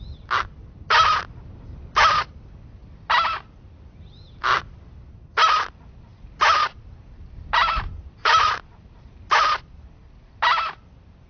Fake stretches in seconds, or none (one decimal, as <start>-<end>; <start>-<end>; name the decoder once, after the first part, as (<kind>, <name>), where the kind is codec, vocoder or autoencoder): 6.1-9.4 (vocoder, BigVGAN v2)